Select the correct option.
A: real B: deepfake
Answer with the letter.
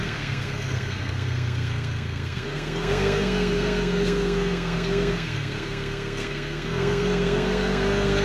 B